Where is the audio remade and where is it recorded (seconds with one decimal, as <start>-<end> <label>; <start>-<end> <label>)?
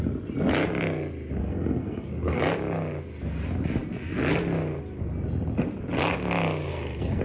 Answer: 0.0-1.4 recorded; 1.4-2.4 remade; 2.4-6.7 recorded; 6.7-7.2 remade